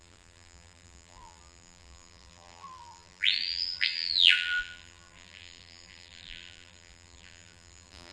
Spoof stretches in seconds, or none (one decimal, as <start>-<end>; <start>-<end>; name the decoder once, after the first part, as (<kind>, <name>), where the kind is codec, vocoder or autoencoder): 0.0-8.1 (vocoder, BigVGAN v2)